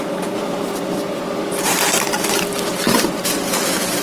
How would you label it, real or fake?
real